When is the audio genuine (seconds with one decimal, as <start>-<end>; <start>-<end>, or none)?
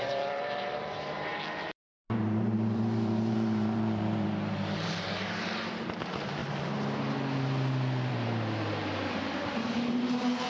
6.4-8.1